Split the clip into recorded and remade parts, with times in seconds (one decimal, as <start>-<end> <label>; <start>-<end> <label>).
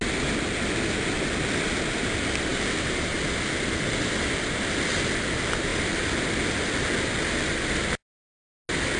0.0-9.0 recorded